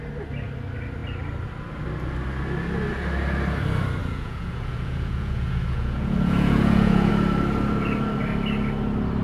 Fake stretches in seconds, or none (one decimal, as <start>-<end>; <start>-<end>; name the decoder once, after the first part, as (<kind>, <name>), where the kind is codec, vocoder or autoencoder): 4.0-7.1 (vocoder, Vocos)